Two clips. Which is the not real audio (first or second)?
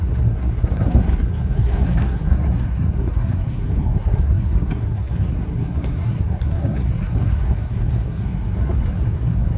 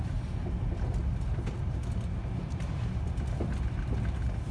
first